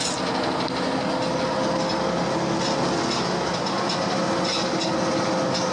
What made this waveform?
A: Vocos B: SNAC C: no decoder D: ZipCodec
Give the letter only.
C